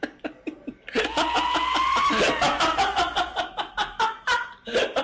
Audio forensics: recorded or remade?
recorded